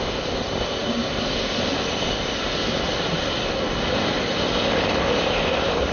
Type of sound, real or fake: real